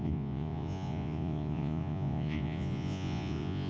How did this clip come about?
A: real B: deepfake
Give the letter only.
B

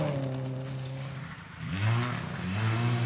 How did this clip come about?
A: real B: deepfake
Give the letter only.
A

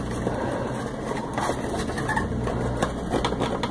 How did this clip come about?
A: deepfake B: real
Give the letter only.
B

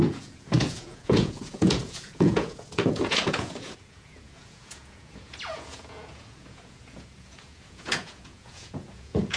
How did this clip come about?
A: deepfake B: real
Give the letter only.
A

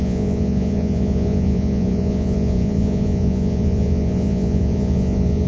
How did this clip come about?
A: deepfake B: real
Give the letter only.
A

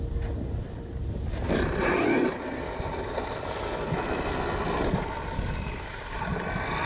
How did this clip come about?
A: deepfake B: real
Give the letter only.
B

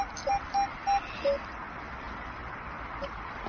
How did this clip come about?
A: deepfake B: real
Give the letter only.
B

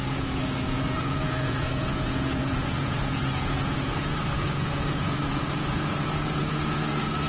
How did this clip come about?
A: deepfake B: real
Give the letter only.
A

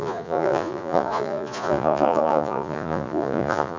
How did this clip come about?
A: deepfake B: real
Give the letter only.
A